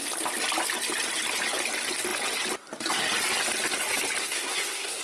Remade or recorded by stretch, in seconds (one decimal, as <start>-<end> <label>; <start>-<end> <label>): 0.0-4.2 recorded; 4.2-5.0 remade